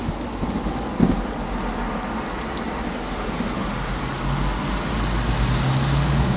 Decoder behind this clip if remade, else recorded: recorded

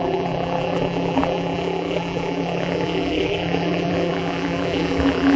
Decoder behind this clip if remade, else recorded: remade, vocoder, BigVGAN v2